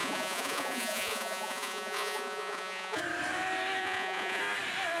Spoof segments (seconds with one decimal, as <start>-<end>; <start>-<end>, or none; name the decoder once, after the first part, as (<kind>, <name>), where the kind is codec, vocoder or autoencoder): 0.0-3.0 (vocoder, Vocos); 3.8-4.4

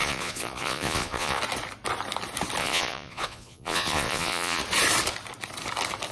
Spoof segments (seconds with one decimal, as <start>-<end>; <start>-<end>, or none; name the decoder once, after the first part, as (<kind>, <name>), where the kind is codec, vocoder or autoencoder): 0.0-1.4 (vocoder, Vocos); 2.6-4.6

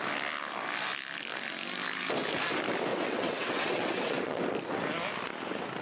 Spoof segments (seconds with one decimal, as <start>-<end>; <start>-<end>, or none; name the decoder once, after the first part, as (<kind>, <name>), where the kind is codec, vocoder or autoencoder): 2.9-4.4 (vocoder, WaveNeXt)